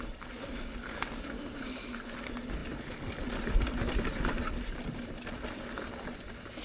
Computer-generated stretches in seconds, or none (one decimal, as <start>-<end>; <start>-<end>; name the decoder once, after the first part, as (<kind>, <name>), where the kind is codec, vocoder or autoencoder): none